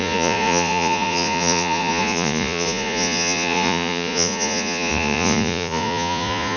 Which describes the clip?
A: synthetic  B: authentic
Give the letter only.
A